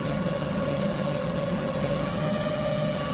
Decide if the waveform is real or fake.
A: fake